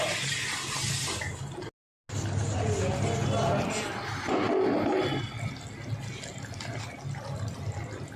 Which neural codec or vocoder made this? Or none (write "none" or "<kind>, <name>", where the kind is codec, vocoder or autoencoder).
none